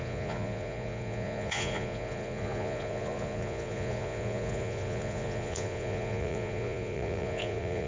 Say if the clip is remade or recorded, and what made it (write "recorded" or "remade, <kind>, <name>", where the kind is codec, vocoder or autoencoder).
remade, vocoder, Vocos